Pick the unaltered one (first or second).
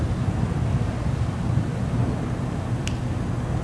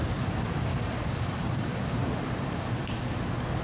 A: first